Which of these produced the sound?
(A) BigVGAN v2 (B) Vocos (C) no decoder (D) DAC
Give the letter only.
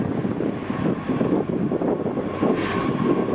C